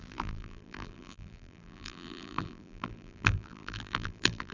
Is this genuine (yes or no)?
no